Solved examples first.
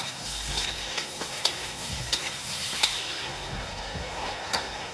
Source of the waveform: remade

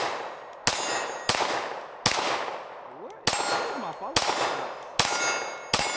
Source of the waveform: recorded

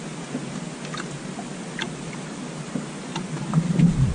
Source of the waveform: recorded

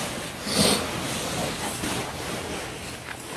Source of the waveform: recorded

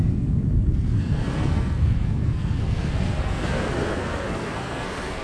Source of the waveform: remade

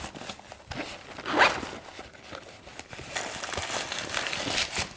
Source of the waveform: recorded